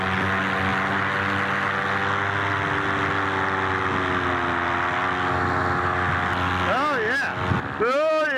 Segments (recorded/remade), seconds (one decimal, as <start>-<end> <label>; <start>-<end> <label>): 0.0-8.4 recorded